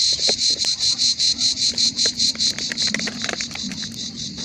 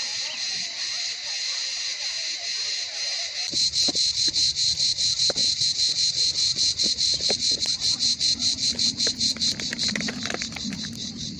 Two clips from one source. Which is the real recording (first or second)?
first